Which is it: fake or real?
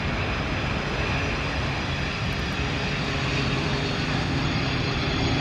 real